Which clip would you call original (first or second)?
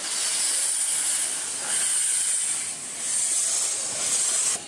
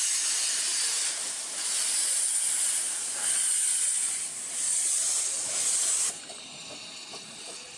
first